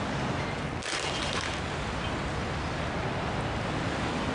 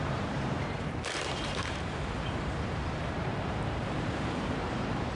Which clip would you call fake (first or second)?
second